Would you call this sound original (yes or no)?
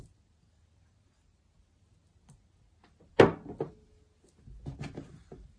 yes